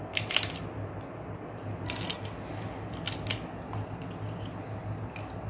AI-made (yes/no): no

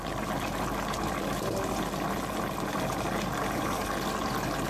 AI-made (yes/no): no